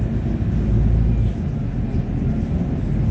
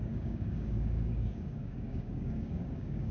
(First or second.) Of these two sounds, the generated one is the second